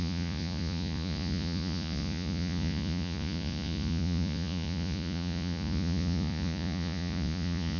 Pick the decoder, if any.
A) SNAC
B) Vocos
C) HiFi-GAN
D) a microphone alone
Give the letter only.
B